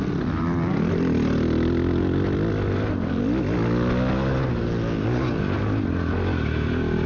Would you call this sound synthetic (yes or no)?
no